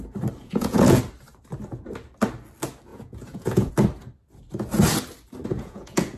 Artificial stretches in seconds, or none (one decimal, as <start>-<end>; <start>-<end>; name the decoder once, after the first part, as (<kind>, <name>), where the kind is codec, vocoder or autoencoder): 0.4-1.0 (vocoder, Vocos); 2.9-3.7; 5.5-6.2